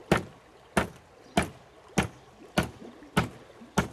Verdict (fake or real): real